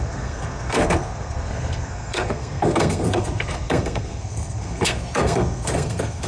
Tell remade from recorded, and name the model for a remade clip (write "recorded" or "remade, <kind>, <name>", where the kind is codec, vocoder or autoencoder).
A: remade, codec, SNAC